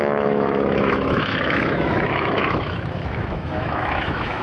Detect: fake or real fake